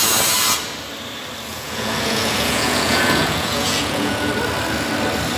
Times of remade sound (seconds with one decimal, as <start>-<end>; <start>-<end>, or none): 1.5-4.3

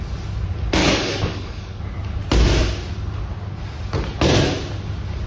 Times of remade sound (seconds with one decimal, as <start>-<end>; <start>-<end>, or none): 0.8-1.8

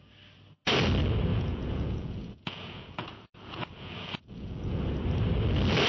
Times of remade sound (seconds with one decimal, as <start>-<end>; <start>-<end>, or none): 1.3-4.8

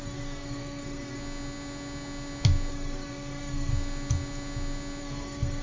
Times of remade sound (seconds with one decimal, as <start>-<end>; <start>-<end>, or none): 0.0-1.2; 2.7-3.7; 5.0-5.6

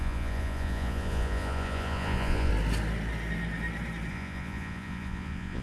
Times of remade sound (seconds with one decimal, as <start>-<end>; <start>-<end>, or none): 0.0-2.5; 4.1-5.6